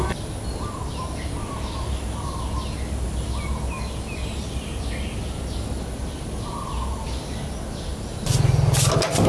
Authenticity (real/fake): real